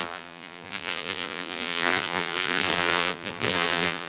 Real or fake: fake